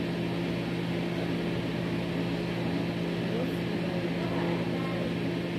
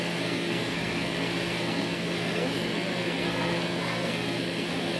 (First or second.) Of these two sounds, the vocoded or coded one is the second